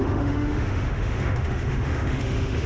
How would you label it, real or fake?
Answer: fake